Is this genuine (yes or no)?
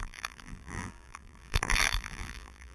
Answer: no